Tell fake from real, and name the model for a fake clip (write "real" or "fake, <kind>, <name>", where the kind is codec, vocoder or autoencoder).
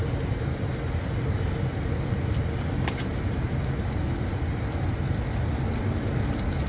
real